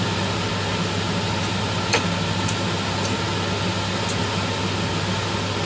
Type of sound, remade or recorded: recorded